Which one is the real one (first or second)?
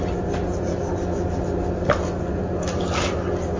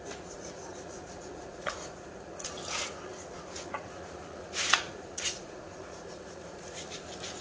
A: first